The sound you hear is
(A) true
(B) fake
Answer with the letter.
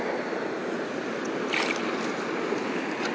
A